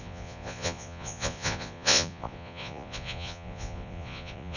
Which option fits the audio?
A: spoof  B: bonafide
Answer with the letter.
A